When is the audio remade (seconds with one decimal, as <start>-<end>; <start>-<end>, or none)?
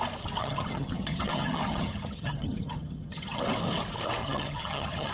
0.4-3.4; 4.2-5.1